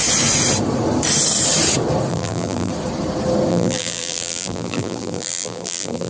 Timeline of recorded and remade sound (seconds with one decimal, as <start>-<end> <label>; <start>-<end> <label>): 0.0-2.1 recorded; 2.1-2.7 remade; 2.7-3.5 recorded; 3.5-6.1 remade